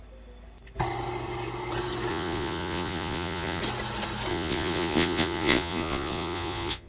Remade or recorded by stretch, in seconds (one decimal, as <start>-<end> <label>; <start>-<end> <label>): 0.0-2.1 recorded; 2.1-3.6 remade; 3.6-4.3 recorded; 4.3-6.9 remade